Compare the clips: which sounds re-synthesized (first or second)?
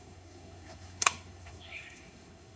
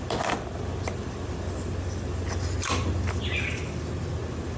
first